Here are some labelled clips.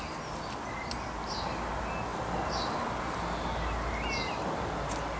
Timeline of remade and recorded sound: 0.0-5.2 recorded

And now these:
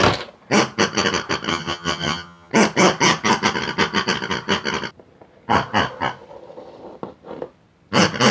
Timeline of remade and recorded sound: 0.0-1.5 recorded; 1.5-2.5 remade; 2.5-8.3 recorded